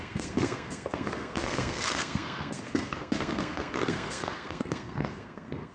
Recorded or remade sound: remade